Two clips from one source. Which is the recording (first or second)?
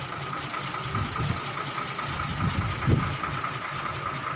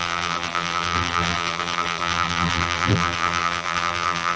first